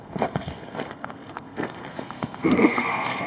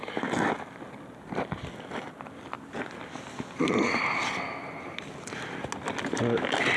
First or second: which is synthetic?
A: first